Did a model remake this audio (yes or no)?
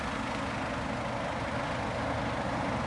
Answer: no